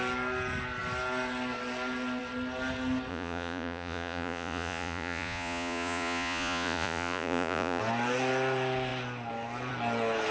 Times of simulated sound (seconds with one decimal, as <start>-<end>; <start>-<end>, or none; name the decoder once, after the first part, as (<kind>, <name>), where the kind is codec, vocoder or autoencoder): 3.1-7.8 (vocoder, Vocos)